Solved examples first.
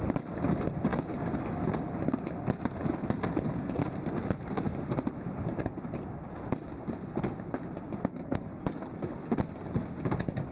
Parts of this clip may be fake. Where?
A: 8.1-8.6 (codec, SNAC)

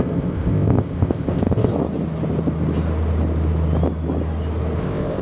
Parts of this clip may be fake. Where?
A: 0.0-1.7 (codec, ZipCodec); 4.8-5.2

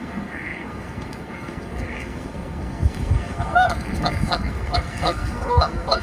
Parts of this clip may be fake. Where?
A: 0.0-6.0 (codec, SNAC)

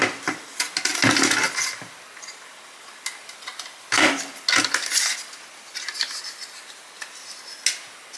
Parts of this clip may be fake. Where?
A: none